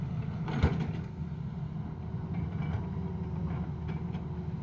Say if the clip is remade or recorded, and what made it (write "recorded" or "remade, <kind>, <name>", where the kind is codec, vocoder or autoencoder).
recorded